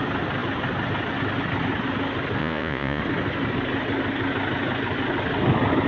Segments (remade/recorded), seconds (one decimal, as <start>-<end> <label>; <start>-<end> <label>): 0.0-2.4 recorded; 2.4-3.0 remade; 3.0-5.9 recorded